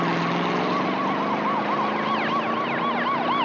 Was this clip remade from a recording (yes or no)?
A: no